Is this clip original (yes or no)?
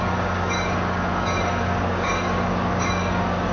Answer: no